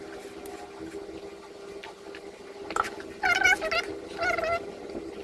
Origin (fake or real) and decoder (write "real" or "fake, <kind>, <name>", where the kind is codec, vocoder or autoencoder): real